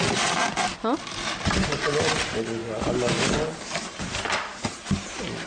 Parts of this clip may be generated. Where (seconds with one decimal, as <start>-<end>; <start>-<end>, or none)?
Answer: none